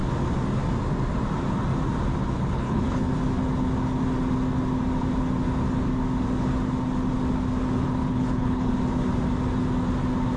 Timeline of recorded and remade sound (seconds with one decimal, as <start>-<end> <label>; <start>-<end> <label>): 0.0-2.2 recorded; 2.2-3.1 remade; 3.1-8.0 recorded; 8.0-8.7 remade; 8.7-10.4 recorded